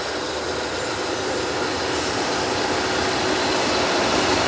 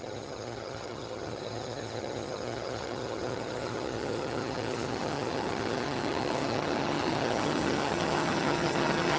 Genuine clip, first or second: first